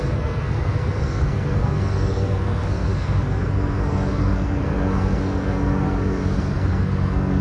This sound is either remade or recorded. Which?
remade